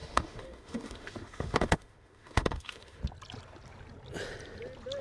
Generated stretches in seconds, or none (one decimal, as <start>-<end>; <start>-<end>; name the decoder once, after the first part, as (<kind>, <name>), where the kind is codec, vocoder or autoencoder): 0.0-3.0 (autoencoder, DAC-VAE)